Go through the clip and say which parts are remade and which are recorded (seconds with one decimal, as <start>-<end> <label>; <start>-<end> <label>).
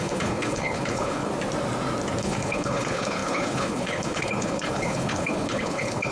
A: 0.0-1.3 remade; 1.3-2.2 recorded; 2.2-6.1 remade